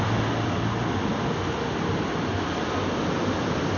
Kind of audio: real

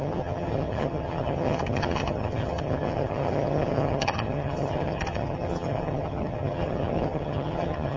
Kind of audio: fake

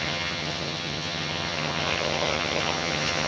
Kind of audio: fake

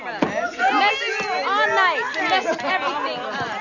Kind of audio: real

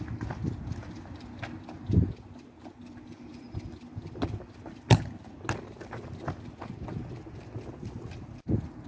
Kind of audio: real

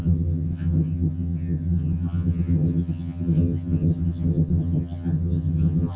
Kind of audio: fake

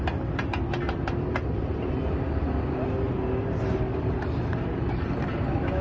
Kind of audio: real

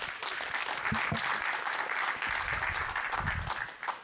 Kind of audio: real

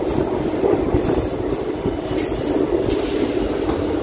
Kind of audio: real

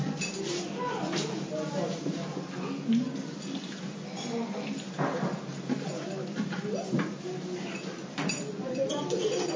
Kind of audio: real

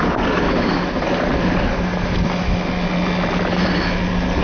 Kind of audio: real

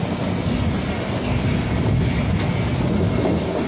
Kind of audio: real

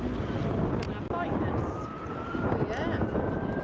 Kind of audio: real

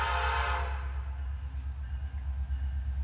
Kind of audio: real